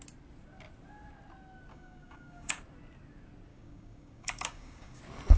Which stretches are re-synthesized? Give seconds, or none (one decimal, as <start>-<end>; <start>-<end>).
1.7-2.6; 3.5-5.0